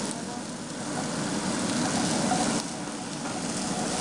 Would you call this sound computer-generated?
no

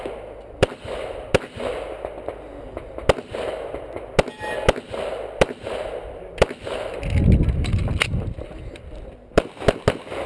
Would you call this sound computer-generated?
no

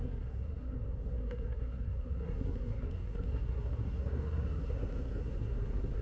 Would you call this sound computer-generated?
yes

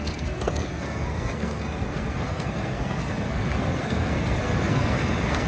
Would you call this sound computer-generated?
yes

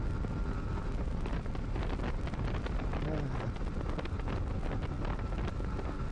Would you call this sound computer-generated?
no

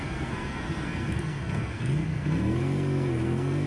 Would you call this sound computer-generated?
yes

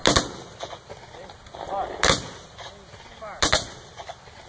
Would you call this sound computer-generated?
no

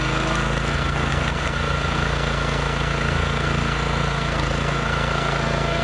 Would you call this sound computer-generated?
yes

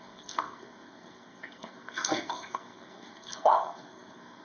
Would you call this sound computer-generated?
yes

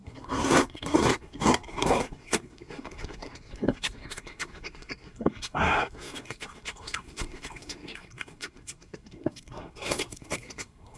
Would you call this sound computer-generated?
yes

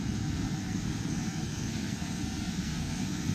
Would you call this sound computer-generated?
yes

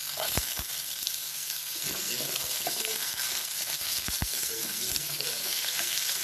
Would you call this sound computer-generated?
yes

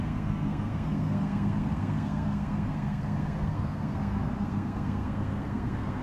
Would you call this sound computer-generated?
yes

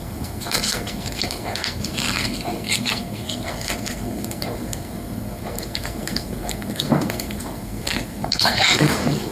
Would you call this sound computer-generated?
yes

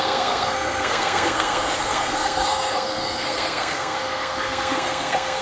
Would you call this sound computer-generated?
yes